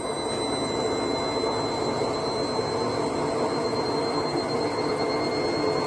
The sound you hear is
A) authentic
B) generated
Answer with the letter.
A